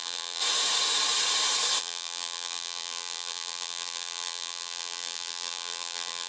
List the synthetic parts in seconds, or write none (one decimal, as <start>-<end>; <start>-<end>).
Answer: 0.0-0.4; 1.8-6.3